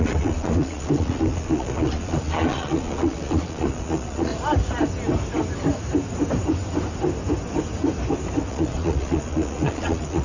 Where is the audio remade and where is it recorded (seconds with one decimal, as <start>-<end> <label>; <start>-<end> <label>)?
0.0-4.3 remade; 4.3-8.5 recorded; 8.5-10.2 remade